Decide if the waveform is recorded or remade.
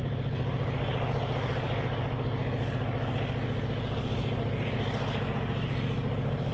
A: recorded